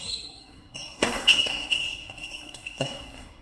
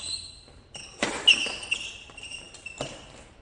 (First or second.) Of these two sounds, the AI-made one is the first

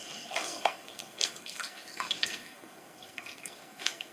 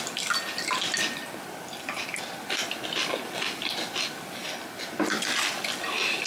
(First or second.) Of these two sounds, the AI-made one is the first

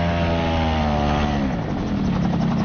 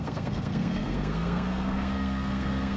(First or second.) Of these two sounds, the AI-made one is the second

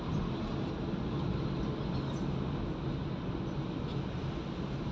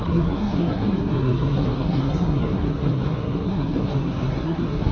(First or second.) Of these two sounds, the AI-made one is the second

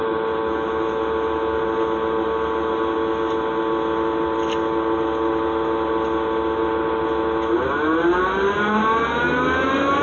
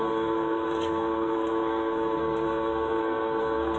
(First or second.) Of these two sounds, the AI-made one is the second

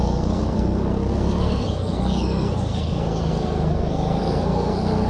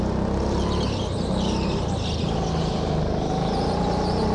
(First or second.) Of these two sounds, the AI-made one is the first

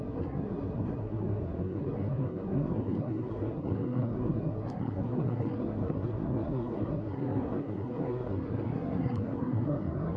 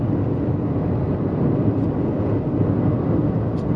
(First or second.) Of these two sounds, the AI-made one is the first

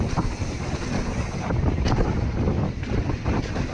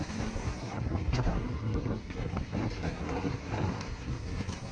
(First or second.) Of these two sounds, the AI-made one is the second